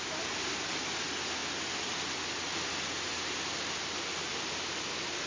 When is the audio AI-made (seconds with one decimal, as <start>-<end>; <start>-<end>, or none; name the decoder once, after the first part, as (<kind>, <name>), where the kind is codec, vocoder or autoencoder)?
none